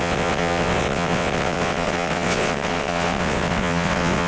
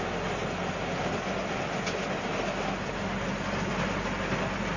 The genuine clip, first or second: second